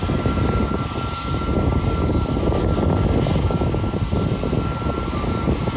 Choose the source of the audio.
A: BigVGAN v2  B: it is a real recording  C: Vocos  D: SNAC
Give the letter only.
B